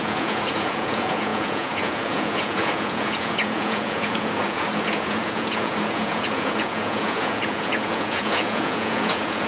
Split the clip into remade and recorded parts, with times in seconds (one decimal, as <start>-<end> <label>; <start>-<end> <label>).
0.0-9.5 remade